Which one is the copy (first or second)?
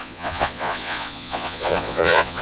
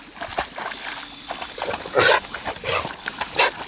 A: first